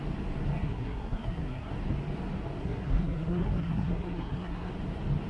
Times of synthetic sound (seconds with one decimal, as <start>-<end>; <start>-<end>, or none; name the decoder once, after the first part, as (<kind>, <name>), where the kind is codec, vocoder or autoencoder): 0.6-1.7 (codec, SNAC); 2.6-4.7